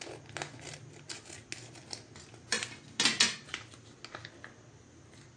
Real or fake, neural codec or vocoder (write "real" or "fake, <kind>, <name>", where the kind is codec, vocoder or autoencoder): real